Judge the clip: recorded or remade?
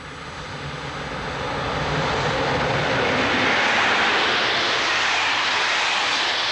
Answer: recorded